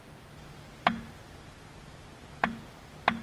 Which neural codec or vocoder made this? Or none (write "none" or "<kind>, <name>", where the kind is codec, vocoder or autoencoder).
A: none